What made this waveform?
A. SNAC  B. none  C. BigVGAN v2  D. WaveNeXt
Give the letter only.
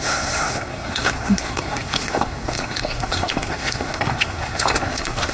A